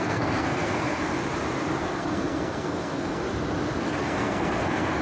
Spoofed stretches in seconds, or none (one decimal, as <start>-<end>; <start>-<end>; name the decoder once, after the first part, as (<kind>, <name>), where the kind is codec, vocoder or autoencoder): 0.0-1.1 (codec, SNAC); 1.8-3.2; 4.0-5.0